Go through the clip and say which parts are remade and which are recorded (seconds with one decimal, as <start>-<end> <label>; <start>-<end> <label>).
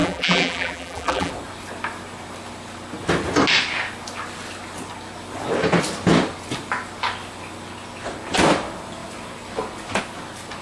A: 0.0-1.3 remade; 1.3-10.6 recorded